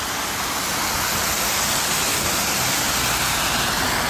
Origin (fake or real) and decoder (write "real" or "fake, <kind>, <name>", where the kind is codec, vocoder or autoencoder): real